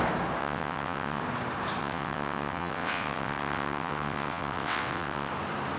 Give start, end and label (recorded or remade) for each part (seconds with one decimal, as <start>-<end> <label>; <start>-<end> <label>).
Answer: 0.0-0.4 recorded; 0.4-1.2 remade; 1.2-1.8 recorded; 1.8-5.3 remade; 5.3-5.8 recorded